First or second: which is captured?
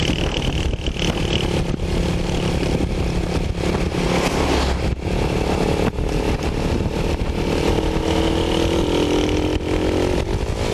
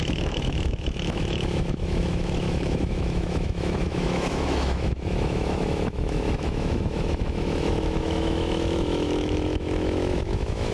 first